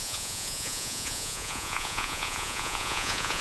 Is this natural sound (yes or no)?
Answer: no